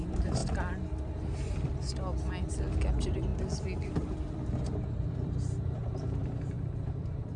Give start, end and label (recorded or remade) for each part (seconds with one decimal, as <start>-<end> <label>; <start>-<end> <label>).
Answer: 0.0-0.4 remade; 0.4-2.9 recorded; 2.9-3.3 remade; 3.3-3.9 recorded; 3.9-7.4 remade